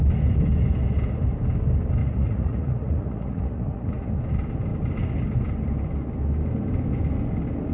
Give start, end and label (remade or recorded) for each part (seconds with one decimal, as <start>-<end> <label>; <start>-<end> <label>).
0.0-2.0 recorded; 2.0-4.1 remade; 4.1-7.7 recorded